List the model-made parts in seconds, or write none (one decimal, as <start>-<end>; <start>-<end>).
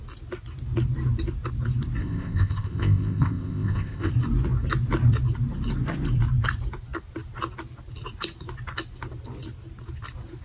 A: 2.0-4.1